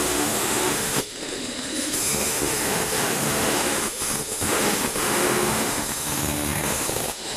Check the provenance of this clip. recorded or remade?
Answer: remade